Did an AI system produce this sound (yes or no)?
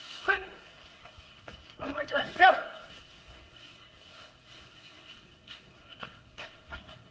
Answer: yes